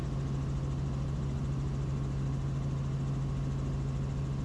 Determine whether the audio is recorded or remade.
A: recorded